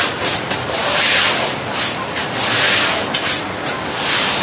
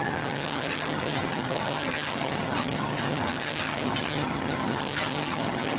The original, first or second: first